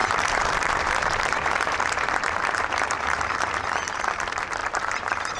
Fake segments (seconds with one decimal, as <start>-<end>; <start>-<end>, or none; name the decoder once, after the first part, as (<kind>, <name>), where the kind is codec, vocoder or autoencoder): 0.0-3.2 (vocoder, BigVGAN v2); 4.6-5.4